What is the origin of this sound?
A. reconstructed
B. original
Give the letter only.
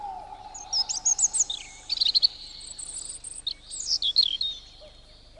B